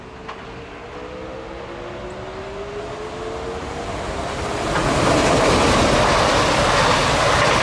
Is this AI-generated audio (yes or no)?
no